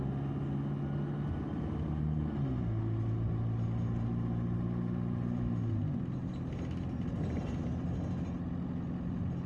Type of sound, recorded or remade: recorded